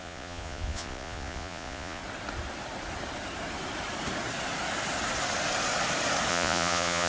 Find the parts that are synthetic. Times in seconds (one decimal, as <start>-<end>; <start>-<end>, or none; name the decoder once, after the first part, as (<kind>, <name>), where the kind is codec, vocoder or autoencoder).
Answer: 0.0-2.0 (vocoder, Vocos); 6.3-7.1